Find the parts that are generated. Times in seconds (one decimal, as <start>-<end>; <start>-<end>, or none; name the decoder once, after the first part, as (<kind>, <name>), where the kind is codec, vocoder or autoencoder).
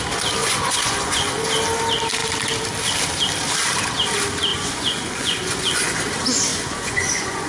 0.4-1.3 (vocoder, Vocos); 4.5-6.0; 6.5-7.5